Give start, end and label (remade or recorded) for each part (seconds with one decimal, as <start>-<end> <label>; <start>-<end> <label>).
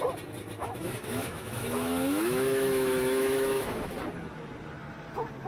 0.0-0.6 recorded; 0.6-3.9 remade; 3.9-5.5 recorded